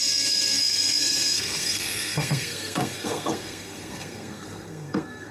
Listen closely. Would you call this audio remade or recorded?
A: remade